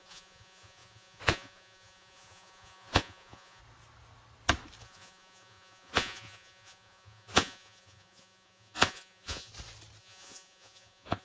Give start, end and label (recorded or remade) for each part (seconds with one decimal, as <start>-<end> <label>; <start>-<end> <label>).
0.0-3.6 remade; 3.6-4.8 recorded; 4.8-9.5 remade; 9.5-10.0 recorded; 10.0-11.2 remade